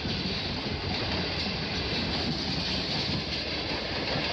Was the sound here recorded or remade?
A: recorded